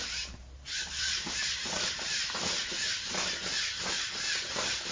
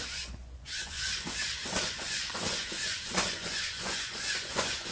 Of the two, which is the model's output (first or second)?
second